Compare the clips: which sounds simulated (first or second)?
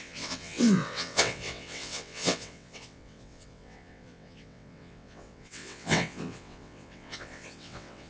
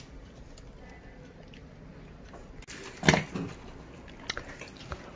first